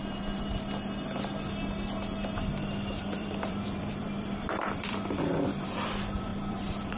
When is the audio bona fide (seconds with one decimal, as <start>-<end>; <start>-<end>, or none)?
0.0-3.0